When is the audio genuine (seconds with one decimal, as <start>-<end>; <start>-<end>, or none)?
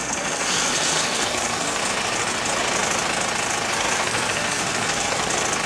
1.8-3.7; 5.3-5.7